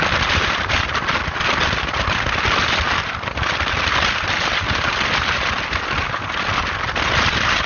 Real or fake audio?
real